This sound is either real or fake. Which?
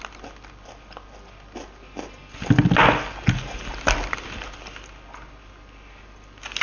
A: real